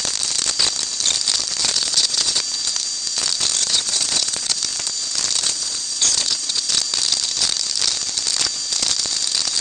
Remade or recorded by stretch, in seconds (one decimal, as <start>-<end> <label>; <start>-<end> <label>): 0.0-1.6 recorded; 1.6-2.4 remade; 2.4-3.6 recorded; 3.6-4.6 remade; 4.6-5.4 recorded; 5.4-6.7 remade; 6.7-9.6 recorded